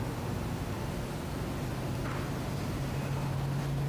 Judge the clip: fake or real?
real